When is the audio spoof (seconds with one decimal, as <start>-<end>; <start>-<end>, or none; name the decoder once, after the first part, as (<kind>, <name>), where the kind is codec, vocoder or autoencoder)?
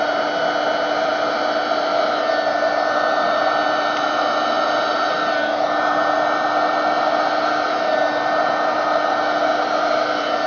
none